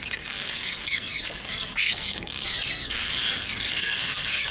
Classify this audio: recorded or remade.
remade